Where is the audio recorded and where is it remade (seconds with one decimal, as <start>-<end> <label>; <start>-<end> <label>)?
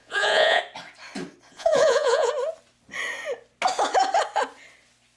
0.0-0.6 remade; 0.6-1.5 recorded; 1.5-2.3 remade; 2.3-5.2 recorded